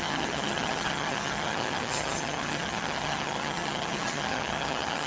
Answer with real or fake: fake